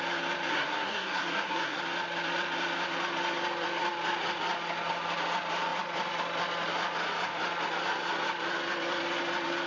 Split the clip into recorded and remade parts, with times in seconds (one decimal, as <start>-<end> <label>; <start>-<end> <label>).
0.0-0.5 recorded; 0.5-1.8 remade; 1.8-9.7 recorded

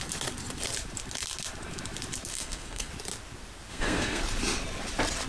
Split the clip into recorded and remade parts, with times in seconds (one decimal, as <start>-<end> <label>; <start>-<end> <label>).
0.0-2.3 recorded; 2.3-2.9 remade; 2.9-3.7 recorded; 3.7-4.2 remade; 4.2-5.3 recorded

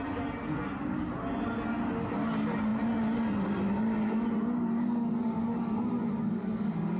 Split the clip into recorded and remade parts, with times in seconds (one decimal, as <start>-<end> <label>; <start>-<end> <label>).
0.0-7.0 recorded

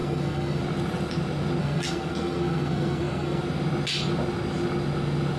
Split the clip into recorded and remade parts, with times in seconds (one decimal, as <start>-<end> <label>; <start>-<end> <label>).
0.0-0.6 remade; 0.6-1.6 recorded; 1.6-3.4 remade; 3.4-5.4 recorded

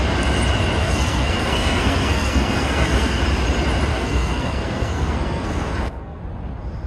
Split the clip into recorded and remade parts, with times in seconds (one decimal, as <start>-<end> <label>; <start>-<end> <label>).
0.0-0.8 recorded; 0.8-3.2 remade; 3.2-3.9 recorded; 3.9-6.2 remade; 6.2-6.9 recorded